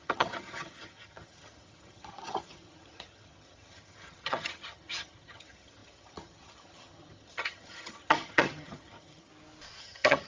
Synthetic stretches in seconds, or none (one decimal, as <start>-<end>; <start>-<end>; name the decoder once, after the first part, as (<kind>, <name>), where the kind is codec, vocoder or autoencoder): 0.0-9.3 (vocoder, HiFi-GAN); 9.8-10.3